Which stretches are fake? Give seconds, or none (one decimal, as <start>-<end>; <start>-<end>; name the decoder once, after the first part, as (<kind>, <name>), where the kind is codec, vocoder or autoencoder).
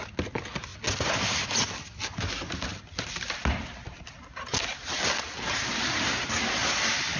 none